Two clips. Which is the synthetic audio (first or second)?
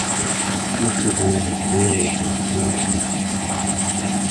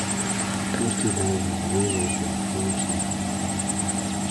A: first